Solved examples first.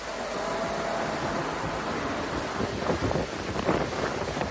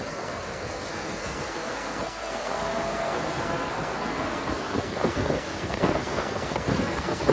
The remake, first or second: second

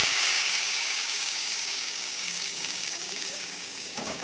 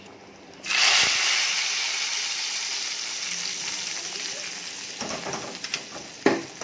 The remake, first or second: first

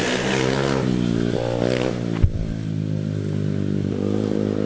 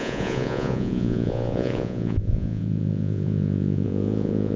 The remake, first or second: second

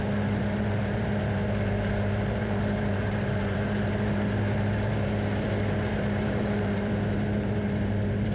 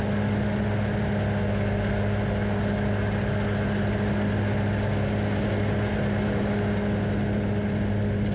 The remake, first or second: first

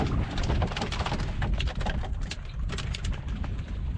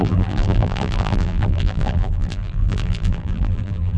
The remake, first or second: second